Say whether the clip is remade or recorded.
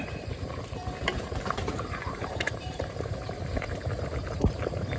remade